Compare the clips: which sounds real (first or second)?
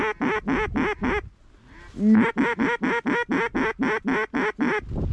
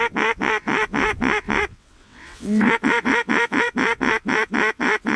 first